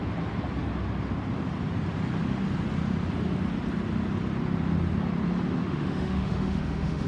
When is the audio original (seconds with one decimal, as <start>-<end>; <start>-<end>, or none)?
0.0-5.6